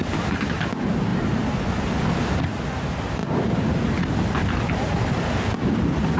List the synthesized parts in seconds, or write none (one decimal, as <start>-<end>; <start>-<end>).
none